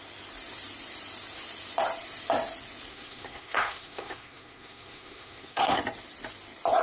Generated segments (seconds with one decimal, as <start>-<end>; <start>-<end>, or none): 2.9-5.8